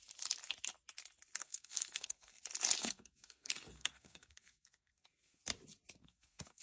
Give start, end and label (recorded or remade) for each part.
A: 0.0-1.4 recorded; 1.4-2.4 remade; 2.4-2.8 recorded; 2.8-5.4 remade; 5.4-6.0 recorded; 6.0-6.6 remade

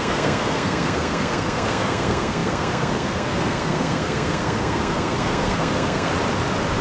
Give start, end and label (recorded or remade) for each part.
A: 0.0-6.1 remade; 6.1-6.8 recorded